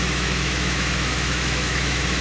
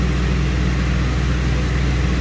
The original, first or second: second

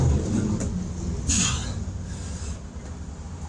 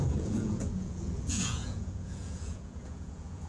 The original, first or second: first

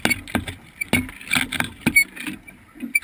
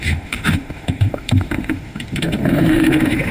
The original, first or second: first